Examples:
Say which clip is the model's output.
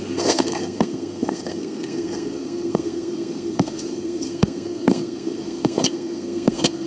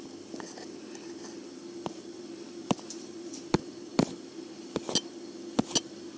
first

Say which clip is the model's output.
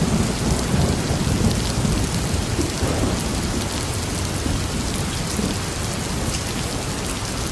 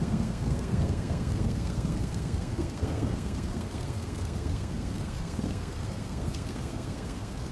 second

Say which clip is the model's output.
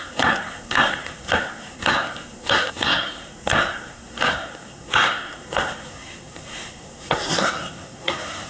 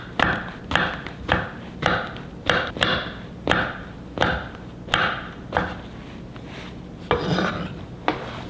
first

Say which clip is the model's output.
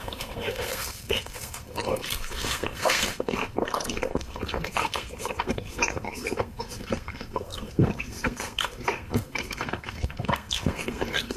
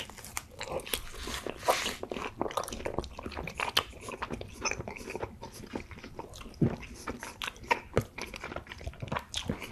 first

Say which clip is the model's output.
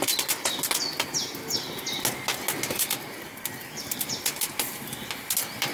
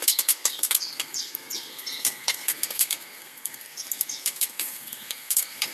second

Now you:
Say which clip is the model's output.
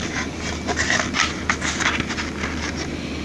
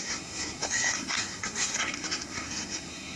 second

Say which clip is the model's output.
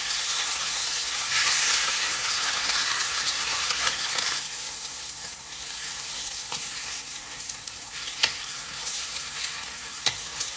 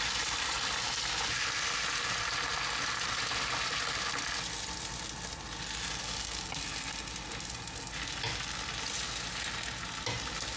first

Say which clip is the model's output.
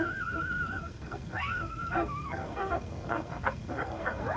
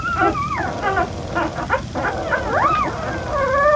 first